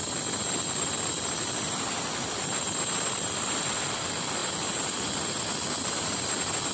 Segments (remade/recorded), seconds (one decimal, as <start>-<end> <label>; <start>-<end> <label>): 0.0-6.7 recorded